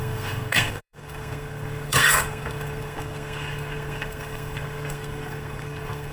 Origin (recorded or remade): remade